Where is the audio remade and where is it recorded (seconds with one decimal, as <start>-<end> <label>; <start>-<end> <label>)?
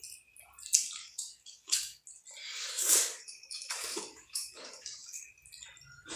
0.0-1.0 recorded; 1.0-2.0 remade; 2.0-2.4 recorded; 2.4-5.3 remade; 5.3-6.2 recorded